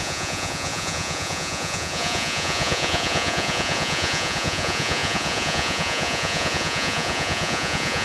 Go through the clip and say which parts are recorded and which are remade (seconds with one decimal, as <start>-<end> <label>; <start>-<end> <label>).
0.0-8.0 remade